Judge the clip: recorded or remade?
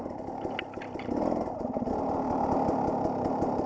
remade